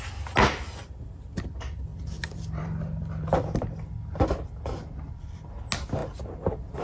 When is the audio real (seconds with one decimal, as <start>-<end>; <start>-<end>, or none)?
0.0-1.9; 5.5-6.8

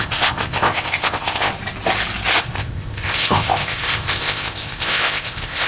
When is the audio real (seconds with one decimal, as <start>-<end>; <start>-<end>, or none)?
1.5-2.4

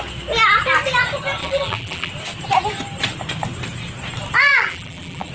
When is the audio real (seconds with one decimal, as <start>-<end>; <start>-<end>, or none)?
0.0-1.4; 2.1-4.5

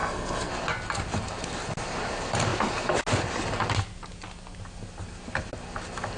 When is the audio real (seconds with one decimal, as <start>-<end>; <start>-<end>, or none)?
0.5-6.2

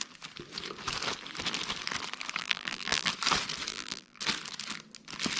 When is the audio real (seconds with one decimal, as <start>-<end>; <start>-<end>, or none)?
0.0-2.4; 3.1-3.7; 4.2-5.4

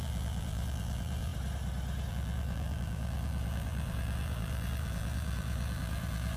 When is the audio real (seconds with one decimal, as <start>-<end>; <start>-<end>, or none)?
1.3-2.1

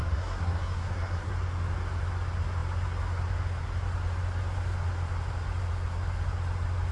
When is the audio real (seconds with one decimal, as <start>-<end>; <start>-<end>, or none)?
1.3-6.9

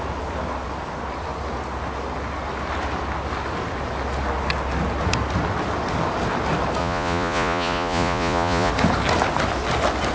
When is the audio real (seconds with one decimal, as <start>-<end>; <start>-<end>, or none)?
0.0-6.8; 8.7-10.1